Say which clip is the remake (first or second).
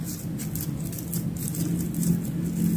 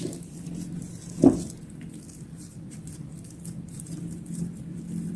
second